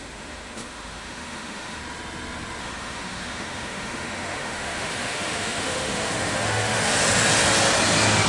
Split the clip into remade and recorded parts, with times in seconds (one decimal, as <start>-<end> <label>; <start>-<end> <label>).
0.0-1.8 remade; 1.8-2.6 recorded; 2.6-6.9 remade; 6.9-8.3 recorded